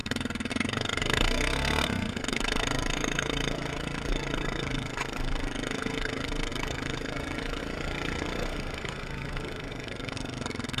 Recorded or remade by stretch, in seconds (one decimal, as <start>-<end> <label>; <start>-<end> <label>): 0.0-10.8 remade